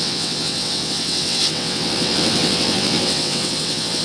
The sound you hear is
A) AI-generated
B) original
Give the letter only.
A